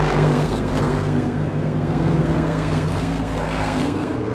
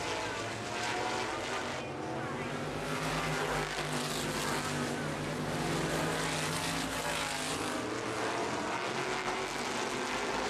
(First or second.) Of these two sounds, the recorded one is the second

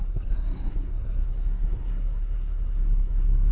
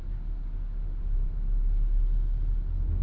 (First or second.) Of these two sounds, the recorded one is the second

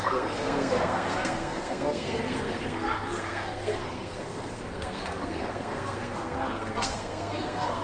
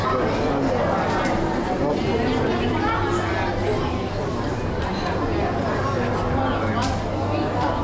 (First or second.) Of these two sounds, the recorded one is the second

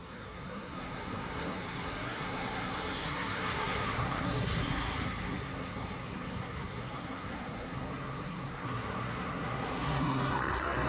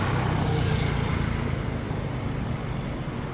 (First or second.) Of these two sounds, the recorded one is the second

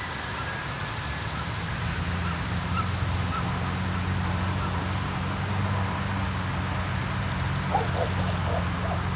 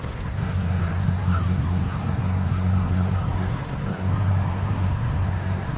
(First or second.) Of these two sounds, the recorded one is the first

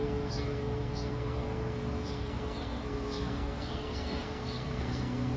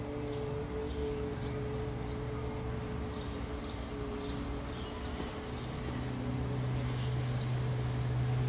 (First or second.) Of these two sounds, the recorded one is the second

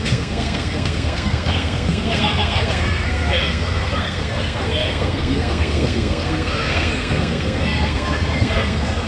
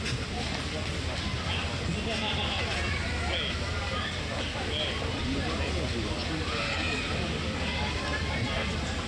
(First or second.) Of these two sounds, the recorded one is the second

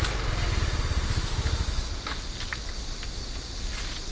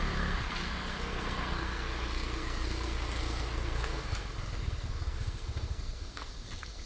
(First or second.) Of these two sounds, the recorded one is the first